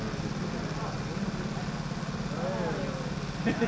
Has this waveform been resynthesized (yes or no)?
no